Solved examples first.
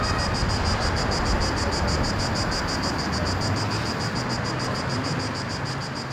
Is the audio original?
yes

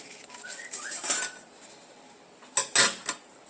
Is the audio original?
yes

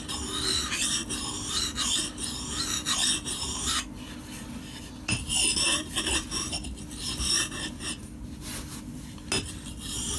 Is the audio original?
yes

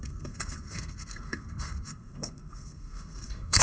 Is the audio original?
no